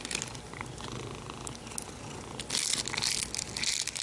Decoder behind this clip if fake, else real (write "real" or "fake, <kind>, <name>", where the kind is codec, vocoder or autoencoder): real